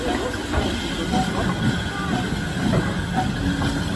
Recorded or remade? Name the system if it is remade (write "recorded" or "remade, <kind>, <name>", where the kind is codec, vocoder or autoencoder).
recorded